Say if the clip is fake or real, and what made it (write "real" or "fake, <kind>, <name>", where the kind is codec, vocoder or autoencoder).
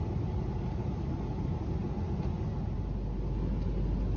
real